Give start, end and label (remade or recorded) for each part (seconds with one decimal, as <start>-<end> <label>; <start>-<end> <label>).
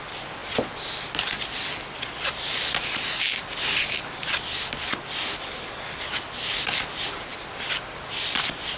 0.0-8.8 recorded